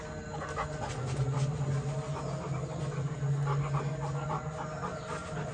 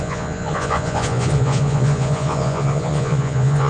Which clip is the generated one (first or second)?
second